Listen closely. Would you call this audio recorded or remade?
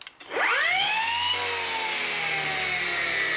recorded